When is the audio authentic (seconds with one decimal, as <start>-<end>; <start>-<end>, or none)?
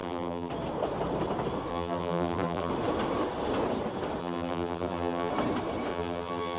0.5-1.7; 2.7-4.2; 5.3-5.9